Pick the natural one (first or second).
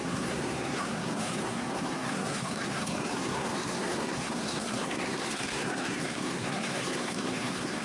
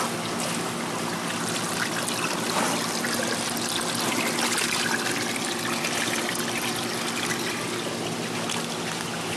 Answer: second